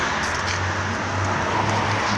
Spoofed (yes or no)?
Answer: no